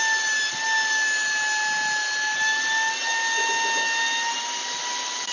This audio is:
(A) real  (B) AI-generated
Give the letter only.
A